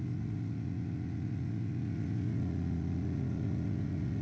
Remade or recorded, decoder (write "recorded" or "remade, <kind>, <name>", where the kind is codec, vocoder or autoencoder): remade, vocoder, Vocos